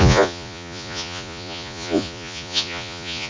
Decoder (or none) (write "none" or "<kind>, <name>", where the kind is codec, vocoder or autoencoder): vocoder, Vocos